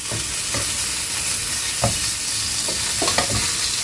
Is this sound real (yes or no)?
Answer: yes